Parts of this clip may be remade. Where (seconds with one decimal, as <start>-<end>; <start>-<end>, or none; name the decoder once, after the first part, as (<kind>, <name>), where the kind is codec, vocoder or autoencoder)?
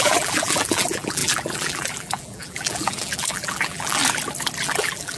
0.0-4.0 (vocoder, BigVGAN v2); 4.6-5.2